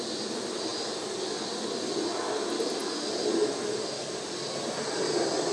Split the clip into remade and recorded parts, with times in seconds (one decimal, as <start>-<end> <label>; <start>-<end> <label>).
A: 0.0-5.5 recorded